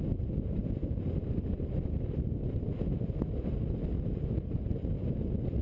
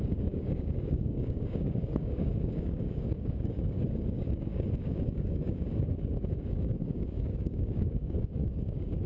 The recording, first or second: first